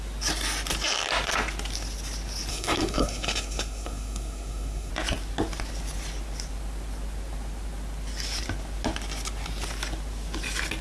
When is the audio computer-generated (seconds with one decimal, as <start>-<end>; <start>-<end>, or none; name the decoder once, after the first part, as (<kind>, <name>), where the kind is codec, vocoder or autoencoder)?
2.5-4.9 (codec, SNAC)